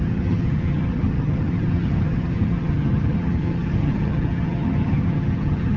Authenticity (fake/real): fake